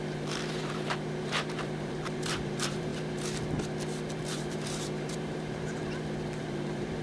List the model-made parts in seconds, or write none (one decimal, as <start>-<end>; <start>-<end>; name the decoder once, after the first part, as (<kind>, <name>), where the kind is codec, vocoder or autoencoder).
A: 0.0-2.9 (vocoder, BigVGAN v2); 4.2-5.8; 6.4-7.0